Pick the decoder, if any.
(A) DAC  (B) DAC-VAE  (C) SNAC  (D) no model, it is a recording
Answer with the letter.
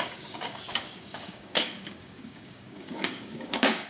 A